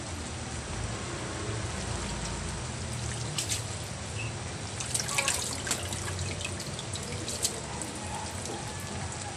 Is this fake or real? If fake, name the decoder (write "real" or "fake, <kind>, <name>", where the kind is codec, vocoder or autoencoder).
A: real